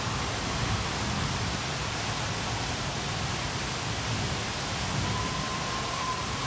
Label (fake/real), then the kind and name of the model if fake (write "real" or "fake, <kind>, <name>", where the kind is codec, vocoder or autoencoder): real